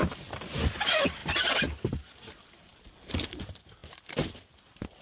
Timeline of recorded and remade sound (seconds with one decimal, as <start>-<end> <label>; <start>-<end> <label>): 0.0-3.8 remade; 3.8-4.3 recorded; 4.3-5.0 remade